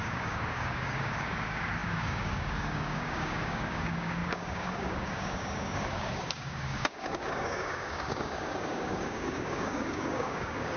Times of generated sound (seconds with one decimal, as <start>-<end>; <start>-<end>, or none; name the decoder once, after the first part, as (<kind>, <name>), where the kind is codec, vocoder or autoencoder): 0.0-10.8 (codec, DAC)